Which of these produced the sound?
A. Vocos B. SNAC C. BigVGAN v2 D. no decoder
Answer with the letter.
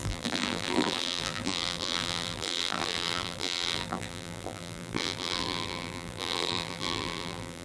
C